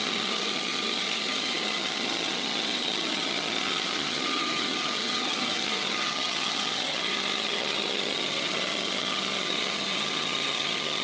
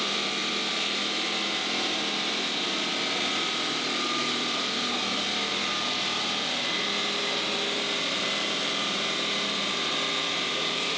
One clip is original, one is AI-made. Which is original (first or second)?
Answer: second